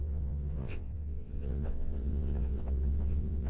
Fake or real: fake